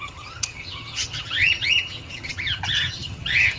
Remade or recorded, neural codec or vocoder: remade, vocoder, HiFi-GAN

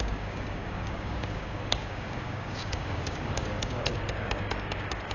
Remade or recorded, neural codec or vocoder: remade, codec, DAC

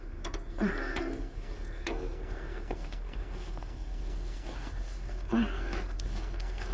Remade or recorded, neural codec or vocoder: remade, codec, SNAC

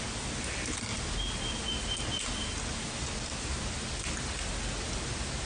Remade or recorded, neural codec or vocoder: recorded